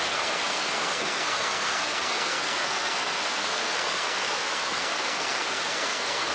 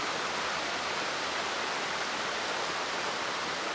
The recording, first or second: second